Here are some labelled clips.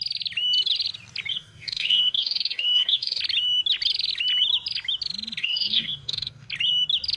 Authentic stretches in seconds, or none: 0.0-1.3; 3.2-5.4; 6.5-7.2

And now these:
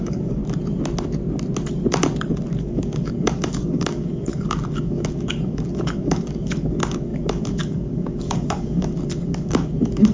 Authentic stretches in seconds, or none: 0.4-2.6

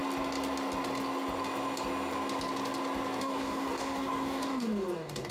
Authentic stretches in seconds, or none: 0.0-3.2

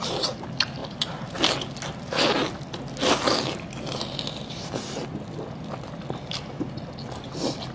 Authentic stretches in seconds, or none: 0.0-7.7

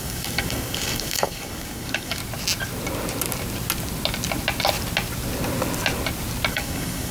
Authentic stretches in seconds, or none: 2.2-6.5

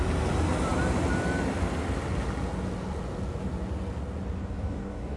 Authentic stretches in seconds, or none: 0.0-4.4